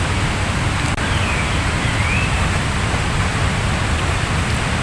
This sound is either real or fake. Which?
real